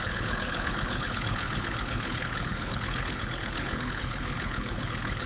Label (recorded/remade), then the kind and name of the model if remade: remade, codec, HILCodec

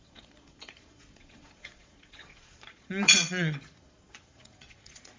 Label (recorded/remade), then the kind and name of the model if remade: remade, vocoder, Vocos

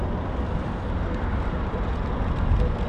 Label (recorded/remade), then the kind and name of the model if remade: recorded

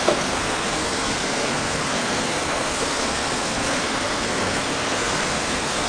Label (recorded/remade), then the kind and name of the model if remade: remade, codec, SNAC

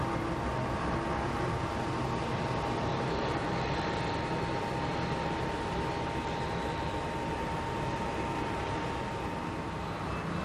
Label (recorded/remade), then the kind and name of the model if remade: recorded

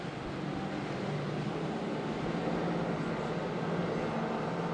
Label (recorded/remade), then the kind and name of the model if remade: recorded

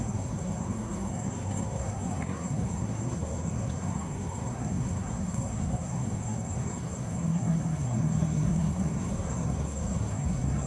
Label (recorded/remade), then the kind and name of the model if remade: remade, codec, SNAC